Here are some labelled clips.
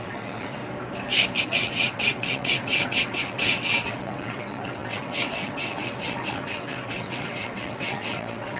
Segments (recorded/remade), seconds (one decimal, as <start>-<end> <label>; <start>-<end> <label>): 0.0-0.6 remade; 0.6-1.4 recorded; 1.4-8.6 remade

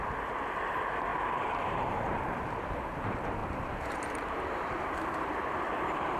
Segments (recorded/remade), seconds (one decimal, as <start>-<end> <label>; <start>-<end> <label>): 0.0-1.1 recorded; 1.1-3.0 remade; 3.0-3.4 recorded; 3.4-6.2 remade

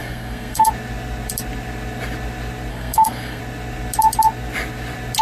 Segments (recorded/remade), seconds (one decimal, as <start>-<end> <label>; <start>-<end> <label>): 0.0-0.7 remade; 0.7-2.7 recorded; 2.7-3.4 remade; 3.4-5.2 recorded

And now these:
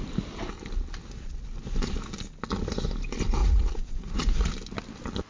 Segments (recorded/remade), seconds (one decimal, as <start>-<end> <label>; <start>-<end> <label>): 0.0-3.4 recorded; 3.4-4.5 remade; 4.5-5.3 recorded

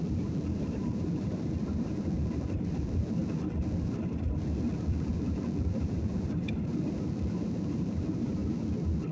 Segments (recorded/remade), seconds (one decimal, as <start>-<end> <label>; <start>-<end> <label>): 0.0-3.2 remade; 3.2-5.1 recorded; 5.1-8.4 remade; 8.4-9.1 recorded

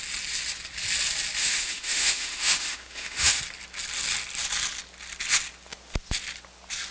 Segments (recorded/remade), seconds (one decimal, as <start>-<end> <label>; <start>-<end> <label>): 0.0-1.4 recorded; 1.4-3.4 remade; 3.4-6.9 recorded

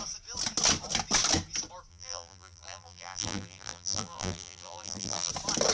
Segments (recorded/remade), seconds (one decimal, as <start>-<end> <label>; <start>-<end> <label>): 0.0-1.9 recorded; 1.9-5.3 remade; 5.3-5.7 recorded